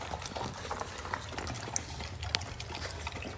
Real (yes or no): yes